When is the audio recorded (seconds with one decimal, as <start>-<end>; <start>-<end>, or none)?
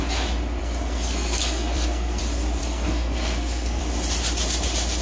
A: 0.0-0.6; 2.2-2.6; 3.8-5.0